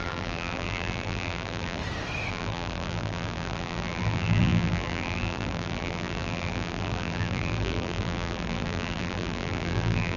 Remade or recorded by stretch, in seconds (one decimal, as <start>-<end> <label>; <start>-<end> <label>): 0.0-1.8 remade; 1.8-2.3 recorded; 2.3-10.2 remade